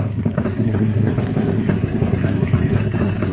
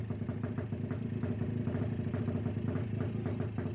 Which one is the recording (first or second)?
second